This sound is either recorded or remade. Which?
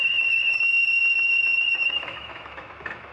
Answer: remade